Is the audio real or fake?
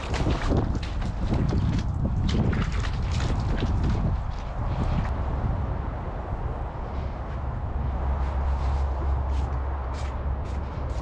real